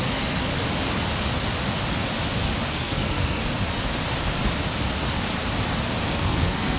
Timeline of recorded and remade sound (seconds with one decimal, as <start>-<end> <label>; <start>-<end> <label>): 0.0-0.5 remade; 0.5-2.7 recorded; 2.7-3.4 remade; 3.4-6.1 recorded; 6.1-6.8 remade